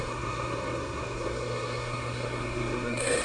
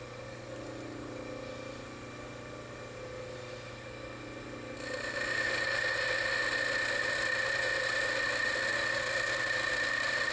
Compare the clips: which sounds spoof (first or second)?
first